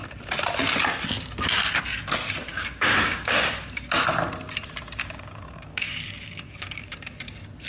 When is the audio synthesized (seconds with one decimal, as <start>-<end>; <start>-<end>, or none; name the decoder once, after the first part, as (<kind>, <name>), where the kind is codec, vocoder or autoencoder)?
2.5-3.5 (codec, DAC); 5.0-6.9